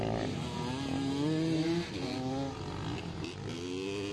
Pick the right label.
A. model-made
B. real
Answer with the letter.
B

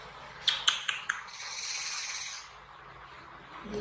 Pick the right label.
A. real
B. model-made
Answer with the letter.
A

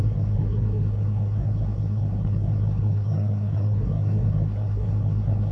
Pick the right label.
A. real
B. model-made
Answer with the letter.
B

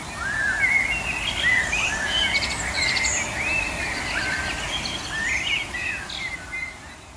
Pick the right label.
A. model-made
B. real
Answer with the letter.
B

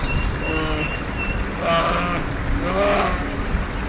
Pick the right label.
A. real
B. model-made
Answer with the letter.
A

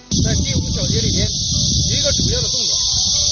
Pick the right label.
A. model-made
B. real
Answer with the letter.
B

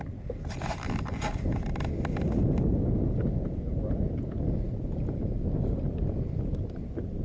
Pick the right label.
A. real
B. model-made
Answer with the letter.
A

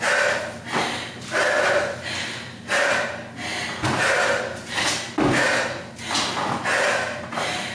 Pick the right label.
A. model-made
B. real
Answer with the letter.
B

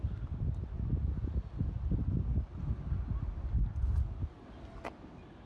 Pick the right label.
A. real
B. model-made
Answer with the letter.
A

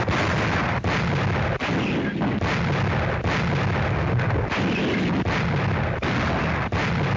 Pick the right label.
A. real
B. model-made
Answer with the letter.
A